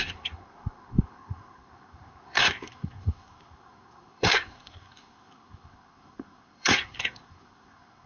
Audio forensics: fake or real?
fake